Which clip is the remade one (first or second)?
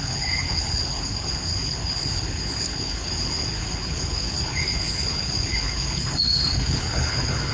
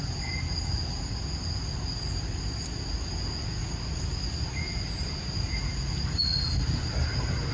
first